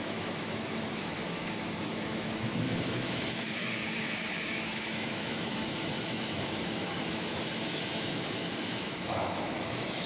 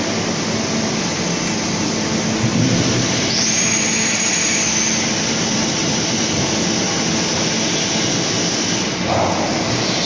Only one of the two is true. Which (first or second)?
second